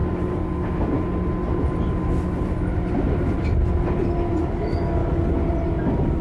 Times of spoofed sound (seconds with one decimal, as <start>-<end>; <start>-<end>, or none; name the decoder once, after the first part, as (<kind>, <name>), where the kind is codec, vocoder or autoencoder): 5.0-5.8 (vocoder, BigVGAN v2)